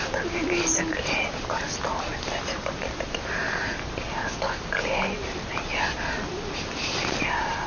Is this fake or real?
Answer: real